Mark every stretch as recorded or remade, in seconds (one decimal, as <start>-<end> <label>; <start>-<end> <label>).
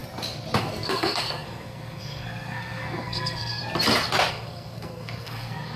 0.0-0.6 recorded; 0.6-3.6 remade; 3.6-4.3 recorded; 4.3-5.8 remade